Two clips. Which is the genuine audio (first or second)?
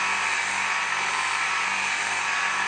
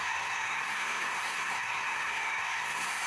first